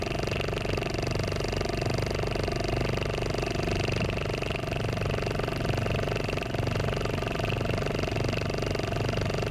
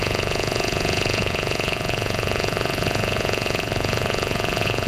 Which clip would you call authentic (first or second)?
first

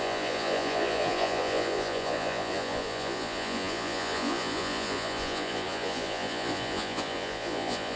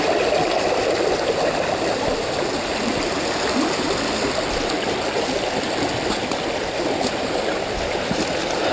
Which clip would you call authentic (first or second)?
second